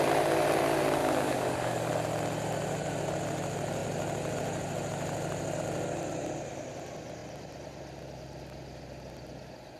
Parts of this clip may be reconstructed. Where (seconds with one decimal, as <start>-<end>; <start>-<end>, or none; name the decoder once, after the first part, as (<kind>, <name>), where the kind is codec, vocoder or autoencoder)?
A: 1.0-1.9 (codec, DAC)